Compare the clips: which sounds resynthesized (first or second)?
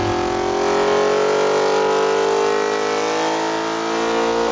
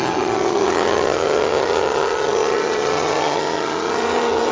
second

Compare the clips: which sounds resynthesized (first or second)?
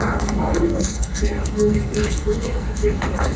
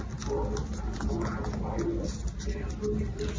first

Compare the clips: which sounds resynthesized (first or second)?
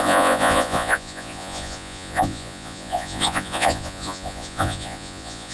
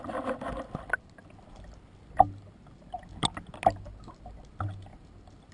first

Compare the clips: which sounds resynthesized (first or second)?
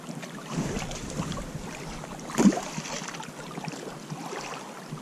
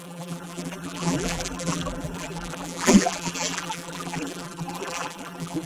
second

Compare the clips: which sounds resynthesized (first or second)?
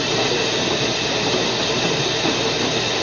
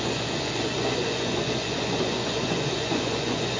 second